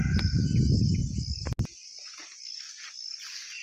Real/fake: real